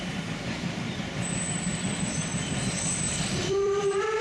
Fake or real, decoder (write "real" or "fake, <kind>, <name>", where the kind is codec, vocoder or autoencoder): fake, vocoder, BigVGAN v2